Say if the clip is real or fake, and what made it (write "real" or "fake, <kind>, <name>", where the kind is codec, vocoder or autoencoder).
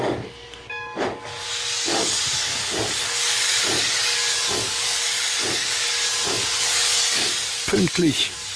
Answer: fake, codec, DAC